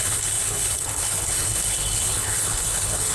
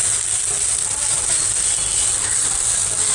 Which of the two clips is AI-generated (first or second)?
first